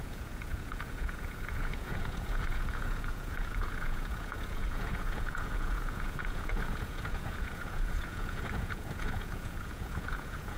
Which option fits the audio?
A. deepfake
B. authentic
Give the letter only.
A